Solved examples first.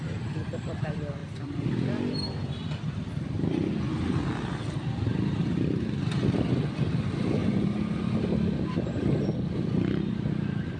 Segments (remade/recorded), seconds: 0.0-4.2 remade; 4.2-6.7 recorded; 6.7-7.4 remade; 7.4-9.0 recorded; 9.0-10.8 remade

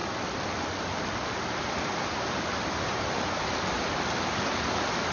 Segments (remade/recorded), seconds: 0.0-5.1 recorded

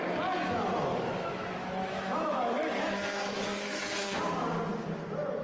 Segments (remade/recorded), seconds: 0.0-0.9 recorded; 0.9-3.8 remade; 3.8-5.4 recorded

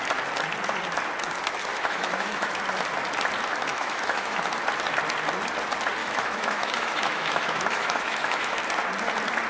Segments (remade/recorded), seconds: 0.0-1.7 recorded; 1.7-2.6 remade; 2.6-3.7 recorded; 3.7-4.4 remade; 4.4-6.0 recorded; 6.0-8.6 remade; 8.6-9.5 recorded

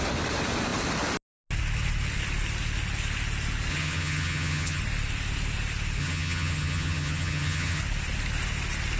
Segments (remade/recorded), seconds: 0.0-3.7 recorded; 3.7-4.8 remade; 4.8-6.0 recorded; 6.0-7.8 remade; 7.8-9.0 recorded

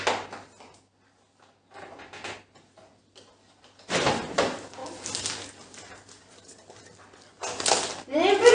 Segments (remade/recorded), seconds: 0.0-8.5 recorded